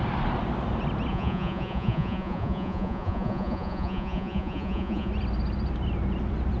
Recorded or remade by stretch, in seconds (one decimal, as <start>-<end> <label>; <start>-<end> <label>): 0.0-1.1 recorded; 1.1-5.1 remade; 5.1-6.6 recorded